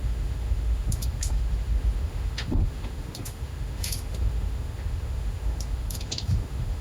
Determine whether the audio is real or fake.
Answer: fake